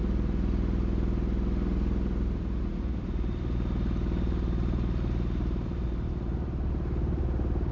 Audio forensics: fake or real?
real